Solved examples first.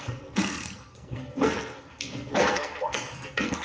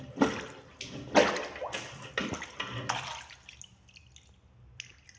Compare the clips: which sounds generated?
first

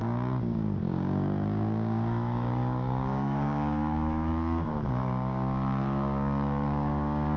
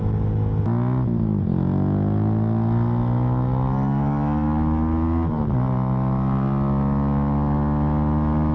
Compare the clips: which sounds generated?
first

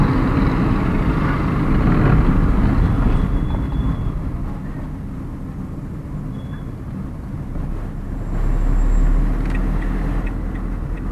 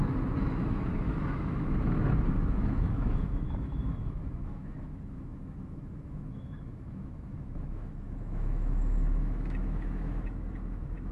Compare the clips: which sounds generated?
second